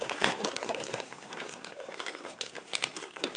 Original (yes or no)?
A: no